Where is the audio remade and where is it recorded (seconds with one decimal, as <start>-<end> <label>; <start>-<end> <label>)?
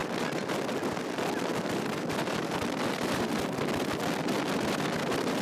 0.0-0.7 remade; 0.7-1.5 recorded; 1.5-3.3 remade; 3.3-5.4 recorded